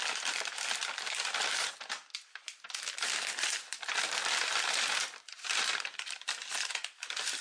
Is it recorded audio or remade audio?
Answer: recorded